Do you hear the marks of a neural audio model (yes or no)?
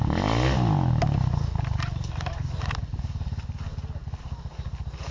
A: no